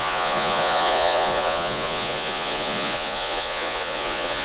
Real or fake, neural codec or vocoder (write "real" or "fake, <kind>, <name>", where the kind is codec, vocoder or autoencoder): fake, vocoder, Vocos